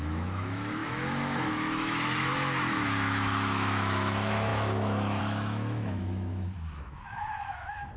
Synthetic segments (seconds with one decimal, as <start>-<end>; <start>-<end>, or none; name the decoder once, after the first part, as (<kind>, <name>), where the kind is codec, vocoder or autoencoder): 0.0-8.0 (autoencoder, DAC-VAE)